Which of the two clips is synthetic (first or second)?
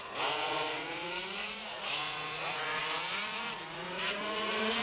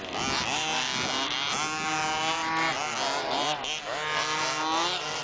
first